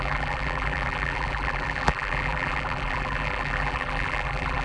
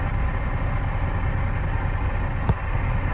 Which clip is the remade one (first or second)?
first